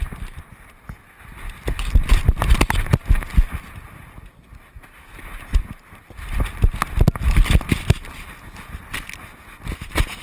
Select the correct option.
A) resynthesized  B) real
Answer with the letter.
B